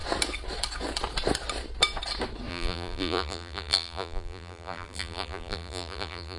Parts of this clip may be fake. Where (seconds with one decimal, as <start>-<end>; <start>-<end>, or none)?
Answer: 2.5-6.4